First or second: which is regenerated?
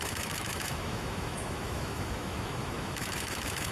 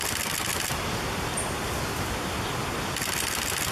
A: first